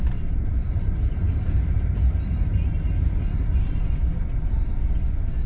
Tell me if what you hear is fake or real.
real